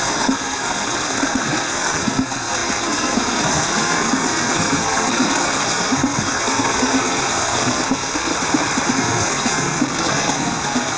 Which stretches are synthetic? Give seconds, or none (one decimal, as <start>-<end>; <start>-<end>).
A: 0.0-8.3; 8.9-11.0